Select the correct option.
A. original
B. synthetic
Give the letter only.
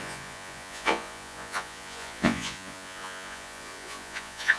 B